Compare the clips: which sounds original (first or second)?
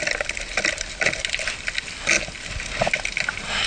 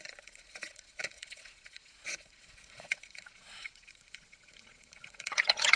first